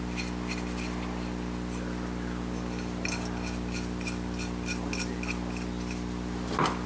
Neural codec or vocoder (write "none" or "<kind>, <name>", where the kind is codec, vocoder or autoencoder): none